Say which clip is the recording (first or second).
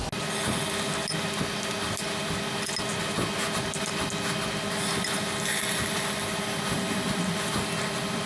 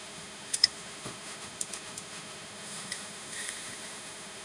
first